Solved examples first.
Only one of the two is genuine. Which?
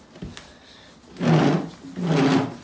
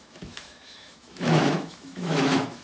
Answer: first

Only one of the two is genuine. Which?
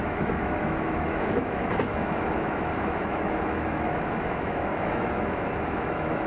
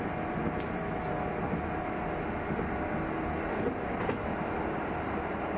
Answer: second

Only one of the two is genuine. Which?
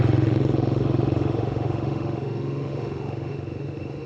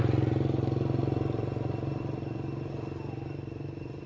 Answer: second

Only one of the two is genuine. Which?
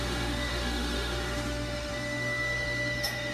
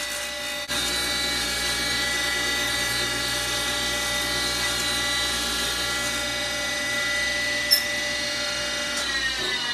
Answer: second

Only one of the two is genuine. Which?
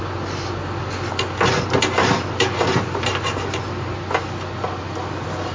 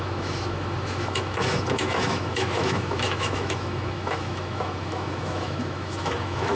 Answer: first